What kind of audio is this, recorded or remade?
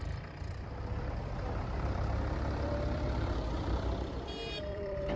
remade